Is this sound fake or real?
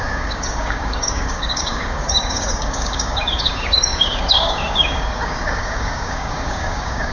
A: fake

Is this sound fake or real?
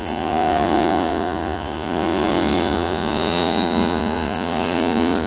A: fake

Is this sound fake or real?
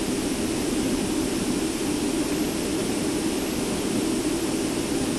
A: real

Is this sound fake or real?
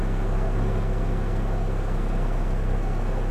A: fake